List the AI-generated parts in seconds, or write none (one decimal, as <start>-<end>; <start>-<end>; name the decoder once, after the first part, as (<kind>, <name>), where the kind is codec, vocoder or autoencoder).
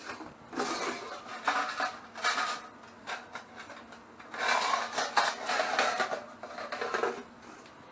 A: none